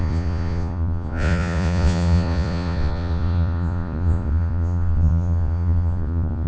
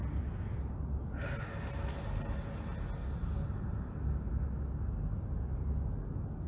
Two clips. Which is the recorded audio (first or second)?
second